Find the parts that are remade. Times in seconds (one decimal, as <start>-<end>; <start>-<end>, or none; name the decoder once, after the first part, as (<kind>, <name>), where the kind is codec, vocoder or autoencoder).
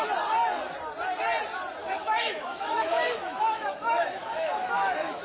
1.8-5.2 (autoencoder, DAC-VAE)